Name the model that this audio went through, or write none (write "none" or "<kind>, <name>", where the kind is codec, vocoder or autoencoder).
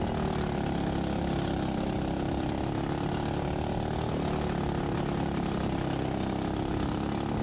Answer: none